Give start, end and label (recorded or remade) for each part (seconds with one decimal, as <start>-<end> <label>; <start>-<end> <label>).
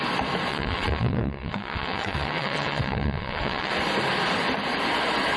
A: 0.0-0.5 recorded; 0.5-3.7 remade; 3.7-5.4 recorded